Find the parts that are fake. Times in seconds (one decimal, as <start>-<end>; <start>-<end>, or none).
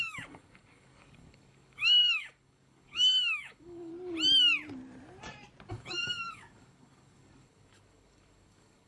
0.0-3.9; 5.7-8.9